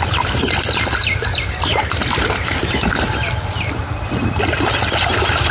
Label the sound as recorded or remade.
recorded